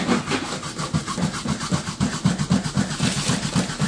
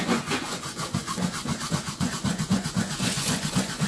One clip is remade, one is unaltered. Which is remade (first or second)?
second